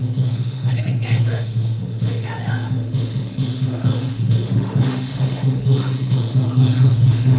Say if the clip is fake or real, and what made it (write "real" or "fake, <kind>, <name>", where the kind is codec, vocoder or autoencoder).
fake, autoencoder, DAC-VAE